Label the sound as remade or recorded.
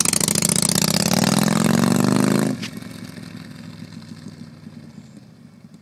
recorded